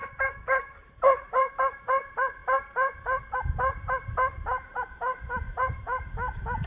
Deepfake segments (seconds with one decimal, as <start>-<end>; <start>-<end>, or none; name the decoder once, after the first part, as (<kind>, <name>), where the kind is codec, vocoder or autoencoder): none